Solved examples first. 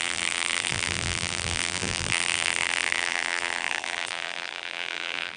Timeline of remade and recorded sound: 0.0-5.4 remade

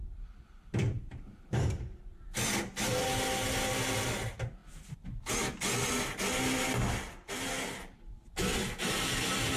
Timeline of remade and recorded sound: 0.0-0.8 recorded; 0.8-2.0 remade; 2.0-9.6 recorded

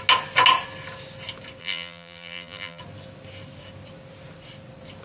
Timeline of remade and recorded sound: 0.0-1.6 recorded; 1.6-2.8 remade; 2.8-5.0 recorded

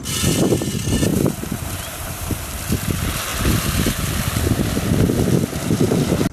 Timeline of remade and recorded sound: 0.0-1.1 recorded; 1.1-2.5 remade; 2.5-6.3 recorded

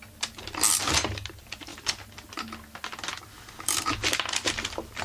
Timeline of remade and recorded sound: 0.0-5.0 recorded

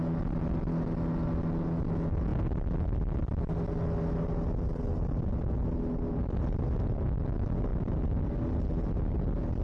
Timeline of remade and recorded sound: 0.0-9.6 recorded

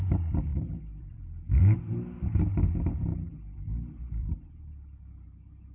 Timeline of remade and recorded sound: 0.0-0.5 recorded; 0.5-1.8 remade; 1.8-3.1 recorded; 3.1-5.1 remade; 5.1-5.7 recorded

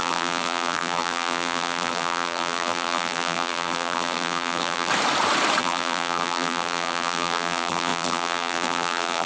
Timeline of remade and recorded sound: 0.0-4.9 remade; 4.9-5.6 recorded; 5.6-9.3 remade